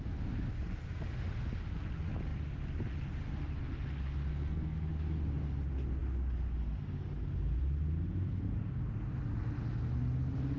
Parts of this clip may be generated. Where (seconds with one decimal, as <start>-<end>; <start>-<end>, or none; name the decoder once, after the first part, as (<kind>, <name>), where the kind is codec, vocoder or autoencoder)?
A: 4.3-4.9 (codec, SNAC)